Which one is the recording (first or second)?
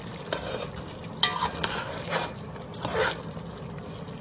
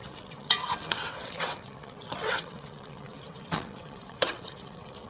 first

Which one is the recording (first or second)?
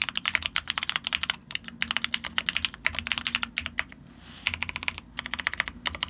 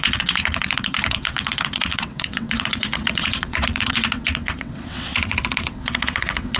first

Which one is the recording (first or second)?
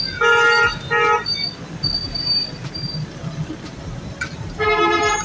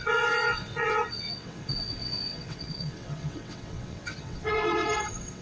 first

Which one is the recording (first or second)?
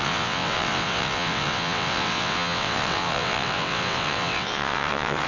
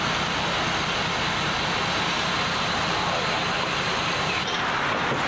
second